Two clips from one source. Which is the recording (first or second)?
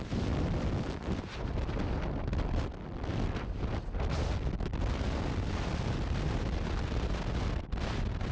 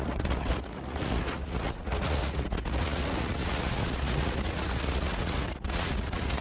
first